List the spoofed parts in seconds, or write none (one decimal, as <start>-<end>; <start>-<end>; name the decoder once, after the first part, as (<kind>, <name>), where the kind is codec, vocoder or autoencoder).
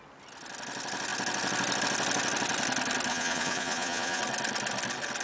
3.1-4.2 (vocoder, Vocos)